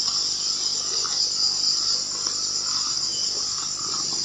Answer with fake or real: real